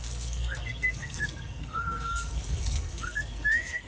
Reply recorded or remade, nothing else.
remade